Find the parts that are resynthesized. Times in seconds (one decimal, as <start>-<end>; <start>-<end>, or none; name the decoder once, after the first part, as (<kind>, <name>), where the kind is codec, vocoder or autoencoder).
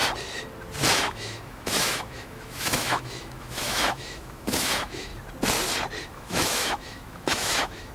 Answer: 1.0-5.1 (autoencoder, DAC-VAE); 6.0-7.9